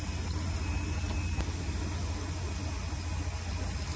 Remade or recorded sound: recorded